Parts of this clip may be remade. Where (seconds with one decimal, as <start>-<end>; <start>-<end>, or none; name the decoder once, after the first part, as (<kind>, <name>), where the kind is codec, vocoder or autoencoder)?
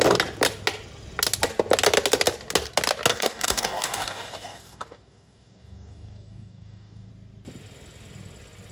3.1-7.1 (codec, DAC)